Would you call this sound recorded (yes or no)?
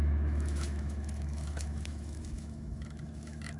no